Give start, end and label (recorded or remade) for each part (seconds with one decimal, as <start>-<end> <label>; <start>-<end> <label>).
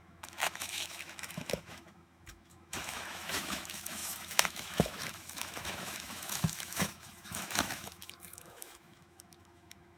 0.0-10.0 remade